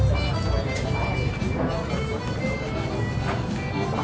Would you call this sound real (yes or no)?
yes